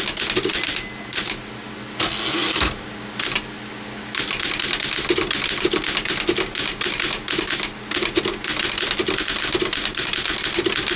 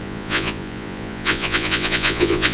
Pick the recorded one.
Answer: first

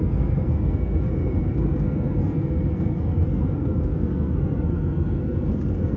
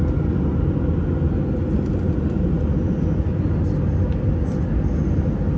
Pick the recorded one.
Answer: second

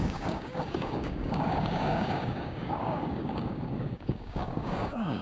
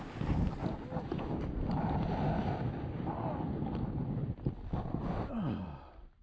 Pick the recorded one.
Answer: second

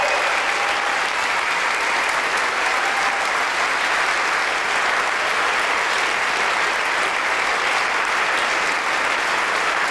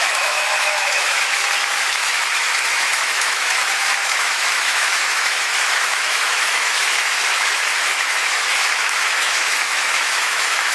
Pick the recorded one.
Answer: first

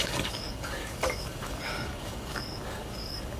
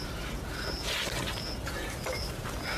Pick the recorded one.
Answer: second